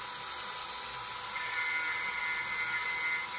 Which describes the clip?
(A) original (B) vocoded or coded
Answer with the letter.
A